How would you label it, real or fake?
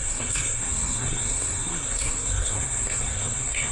fake